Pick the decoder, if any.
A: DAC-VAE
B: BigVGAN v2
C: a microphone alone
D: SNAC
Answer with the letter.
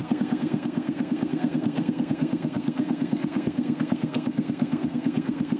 D